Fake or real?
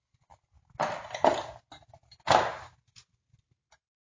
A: real